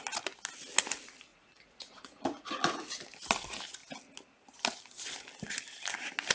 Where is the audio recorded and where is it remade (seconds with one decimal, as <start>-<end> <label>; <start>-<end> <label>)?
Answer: 0.0-1.3 recorded; 1.3-3.0 remade; 3.0-6.3 recorded